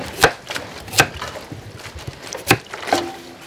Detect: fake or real real